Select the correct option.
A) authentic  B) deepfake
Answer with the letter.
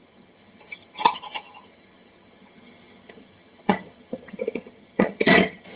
B